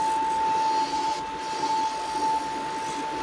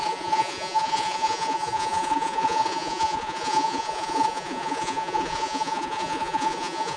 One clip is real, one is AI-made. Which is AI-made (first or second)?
second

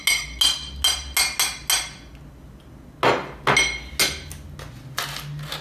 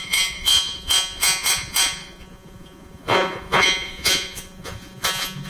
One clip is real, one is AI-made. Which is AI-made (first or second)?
second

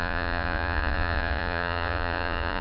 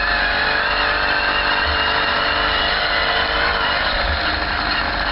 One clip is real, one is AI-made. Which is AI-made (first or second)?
first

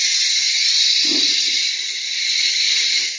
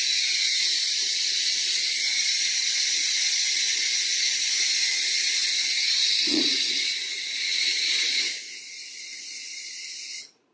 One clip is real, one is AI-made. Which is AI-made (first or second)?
second